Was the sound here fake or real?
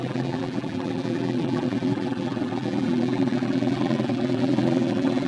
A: fake